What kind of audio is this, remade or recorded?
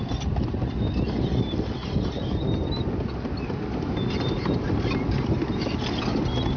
recorded